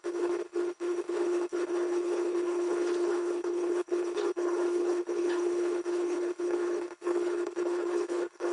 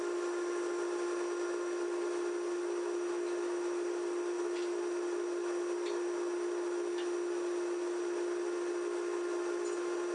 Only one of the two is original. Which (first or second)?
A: second